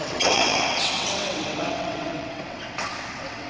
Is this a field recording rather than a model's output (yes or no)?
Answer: no